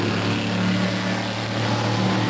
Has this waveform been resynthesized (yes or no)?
no